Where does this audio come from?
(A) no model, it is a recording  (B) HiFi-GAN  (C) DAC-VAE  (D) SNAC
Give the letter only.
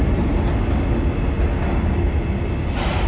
A